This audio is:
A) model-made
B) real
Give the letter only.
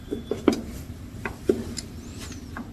A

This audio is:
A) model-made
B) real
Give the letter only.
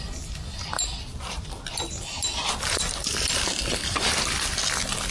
A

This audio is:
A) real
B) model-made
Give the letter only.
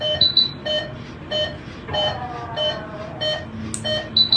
A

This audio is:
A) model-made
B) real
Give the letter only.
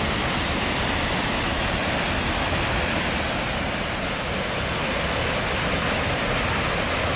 B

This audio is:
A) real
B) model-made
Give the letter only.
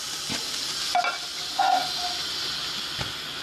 A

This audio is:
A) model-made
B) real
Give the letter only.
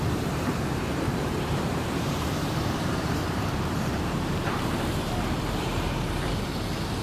A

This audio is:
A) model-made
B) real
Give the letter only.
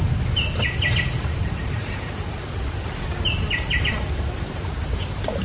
B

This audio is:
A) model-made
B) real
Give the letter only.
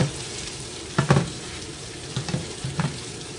A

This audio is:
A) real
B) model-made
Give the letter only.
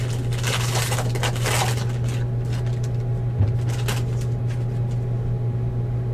A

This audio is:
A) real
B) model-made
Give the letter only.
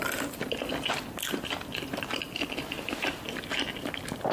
A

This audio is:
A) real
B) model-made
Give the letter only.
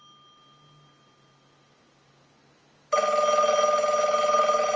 A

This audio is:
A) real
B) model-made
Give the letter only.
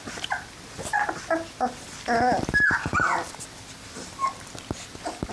B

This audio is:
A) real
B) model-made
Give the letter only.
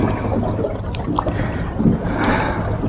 A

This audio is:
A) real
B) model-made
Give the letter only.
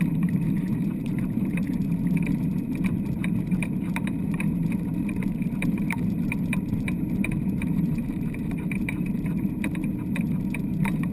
B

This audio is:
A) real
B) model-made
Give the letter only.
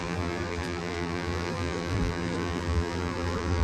B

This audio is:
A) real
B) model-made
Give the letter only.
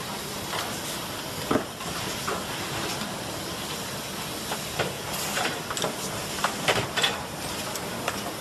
A